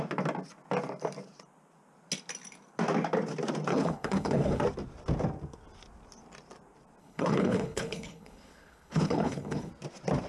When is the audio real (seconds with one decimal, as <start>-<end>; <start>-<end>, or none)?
0.0-3.7; 4.6-7.0; 9.7-10.3